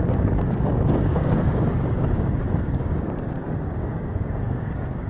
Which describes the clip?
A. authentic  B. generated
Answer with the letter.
B